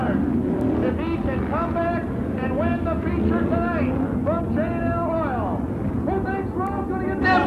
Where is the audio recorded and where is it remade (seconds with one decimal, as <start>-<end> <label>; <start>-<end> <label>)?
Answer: 0.0-7.5 recorded